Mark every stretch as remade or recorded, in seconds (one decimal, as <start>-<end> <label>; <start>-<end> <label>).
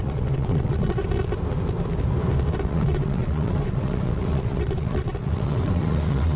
0.0-1.0 remade; 1.0-2.5 recorded; 2.5-6.4 remade